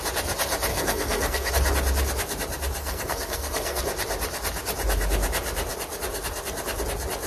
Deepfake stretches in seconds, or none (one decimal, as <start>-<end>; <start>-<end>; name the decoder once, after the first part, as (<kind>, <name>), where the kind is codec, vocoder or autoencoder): 0.7-1.5 (codec, SNAC); 2.8-3.8